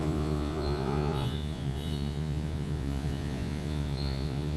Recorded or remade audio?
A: remade